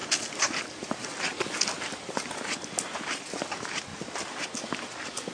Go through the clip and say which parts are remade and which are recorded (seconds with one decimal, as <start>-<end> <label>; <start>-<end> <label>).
0.0-5.3 recorded